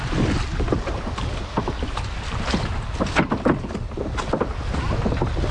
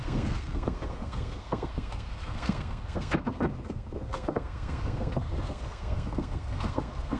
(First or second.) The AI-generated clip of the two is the second